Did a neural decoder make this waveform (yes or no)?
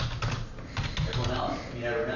no